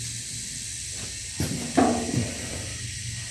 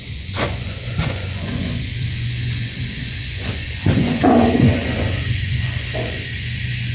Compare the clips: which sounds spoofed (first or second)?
second